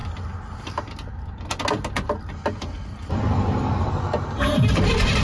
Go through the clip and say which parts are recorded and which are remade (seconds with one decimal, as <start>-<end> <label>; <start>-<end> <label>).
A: 0.0-3.1 recorded; 3.1-5.2 remade